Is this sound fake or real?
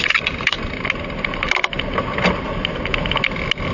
real